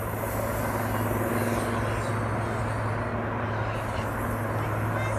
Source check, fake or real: real